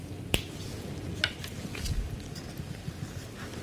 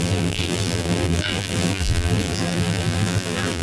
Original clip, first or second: first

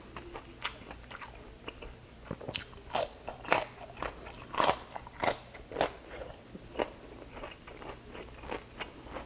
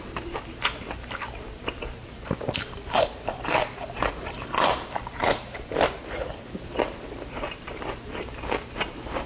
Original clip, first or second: first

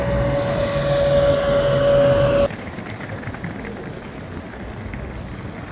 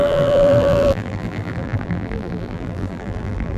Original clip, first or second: first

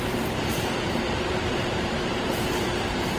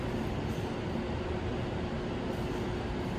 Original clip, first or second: second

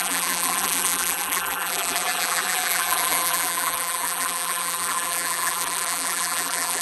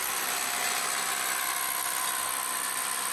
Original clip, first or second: second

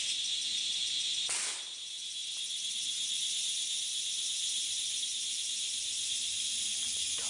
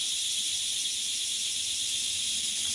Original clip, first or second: first